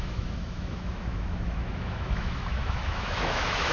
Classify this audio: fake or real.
fake